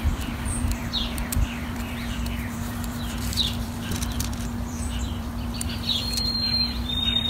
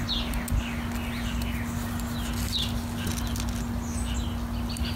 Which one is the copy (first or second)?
first